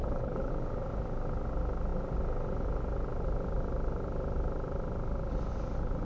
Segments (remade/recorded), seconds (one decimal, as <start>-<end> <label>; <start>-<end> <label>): 0.0-0.5 remade; 0.5-6.0 recorded